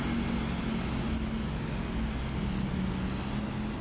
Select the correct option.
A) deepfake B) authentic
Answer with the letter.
B